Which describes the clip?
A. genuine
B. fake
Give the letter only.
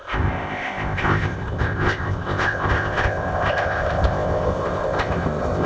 B